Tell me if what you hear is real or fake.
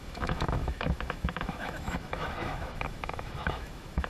fake